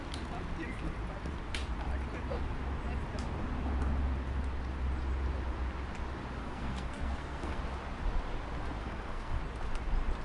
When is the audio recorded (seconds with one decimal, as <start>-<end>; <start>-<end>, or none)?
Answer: 0.0-6.4; 7.6-8.8; 9.4-10.2